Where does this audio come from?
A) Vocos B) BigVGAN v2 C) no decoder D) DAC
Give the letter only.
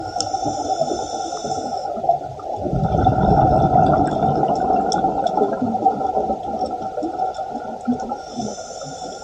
C